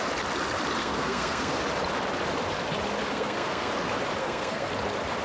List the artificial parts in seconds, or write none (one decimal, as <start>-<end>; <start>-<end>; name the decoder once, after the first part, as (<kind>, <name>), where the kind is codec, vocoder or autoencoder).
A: 0.8-1.6 (codec, SNAC); 3.1-3.7; 4.2-4.7